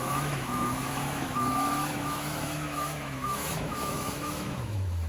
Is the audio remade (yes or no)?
yes